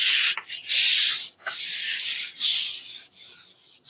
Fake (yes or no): no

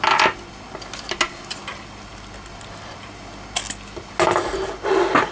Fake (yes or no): no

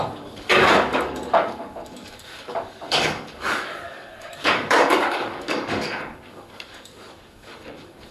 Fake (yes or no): yes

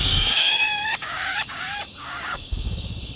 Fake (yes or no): yes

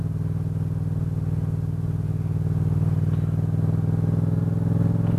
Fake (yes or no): no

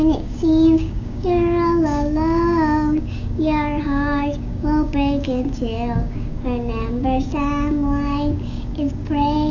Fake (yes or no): yes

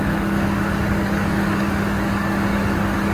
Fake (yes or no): yes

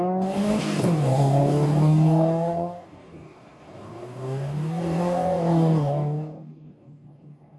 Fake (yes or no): yes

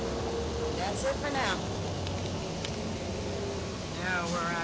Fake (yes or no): no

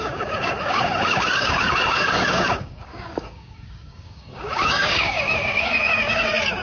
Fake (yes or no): yes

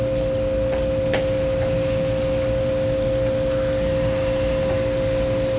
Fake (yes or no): no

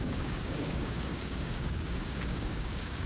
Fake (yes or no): yes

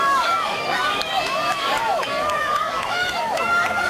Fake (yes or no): yes